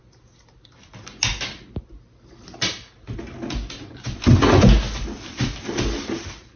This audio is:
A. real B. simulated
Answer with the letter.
A